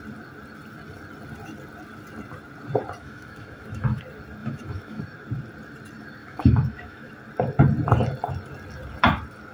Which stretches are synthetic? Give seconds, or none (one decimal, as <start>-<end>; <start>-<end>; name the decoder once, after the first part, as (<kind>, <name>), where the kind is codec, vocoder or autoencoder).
3.0-4.0 (autoencoder, DAC-VAE); 4.4-5.0; 6.2-7.1